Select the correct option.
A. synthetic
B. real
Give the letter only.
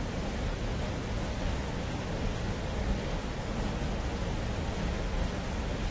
B